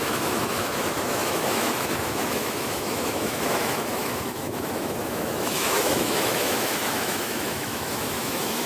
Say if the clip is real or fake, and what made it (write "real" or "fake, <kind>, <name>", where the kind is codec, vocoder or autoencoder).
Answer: fake, autoencoder, DAC-VAE